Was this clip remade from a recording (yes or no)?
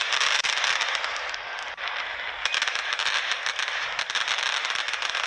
no